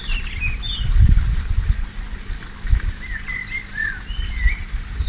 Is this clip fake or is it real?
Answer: real